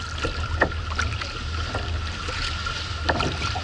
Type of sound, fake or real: real